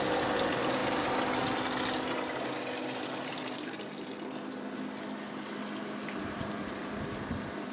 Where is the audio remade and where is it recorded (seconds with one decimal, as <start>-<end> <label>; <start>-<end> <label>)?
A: 0.0-6.0 recorded; 6.0-7.3 remade; 7.3-7.7 recorded